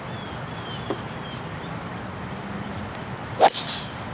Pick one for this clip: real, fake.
real